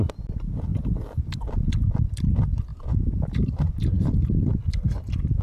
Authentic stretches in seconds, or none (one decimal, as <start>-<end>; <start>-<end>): 0.0-2.7; 3.7-5.4